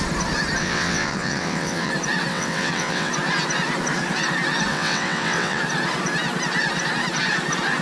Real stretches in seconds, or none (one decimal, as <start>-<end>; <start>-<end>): 0.0-0.6; 1.9-2.3; 3.1-4.7; 5.6-7.8